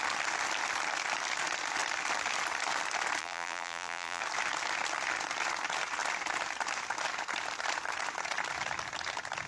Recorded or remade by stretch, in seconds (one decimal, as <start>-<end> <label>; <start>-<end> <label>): 0.0-3.2 recorded; 3.2-4.2 remade; 4.2-9.5 recorded